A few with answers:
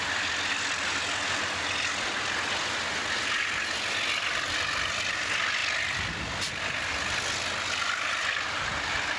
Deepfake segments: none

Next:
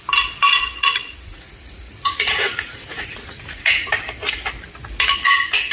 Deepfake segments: 0.7-3.9 (vocoder, Vocos)

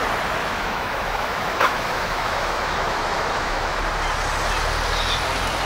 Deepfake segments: 0.4-3.8 (autoencoder, DAC-VAE)

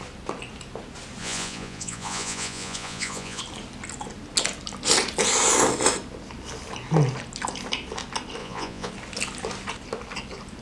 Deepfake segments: 1.2-3.4 (vocoder, Vocos); 8.4-8.9

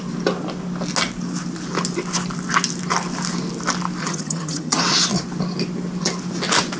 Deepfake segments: 4.0-4.8 (vocoder, HiFi-GAN)